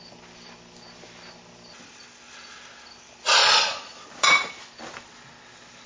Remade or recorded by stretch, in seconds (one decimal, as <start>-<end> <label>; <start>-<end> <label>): 0.0-3.4 recorded; 3.4-4.0 remade; 4.0-5.9 recorded